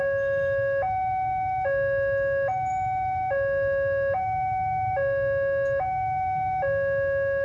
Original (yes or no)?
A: yes